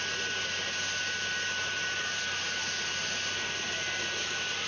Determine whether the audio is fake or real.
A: real